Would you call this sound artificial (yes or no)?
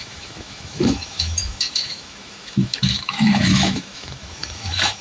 yes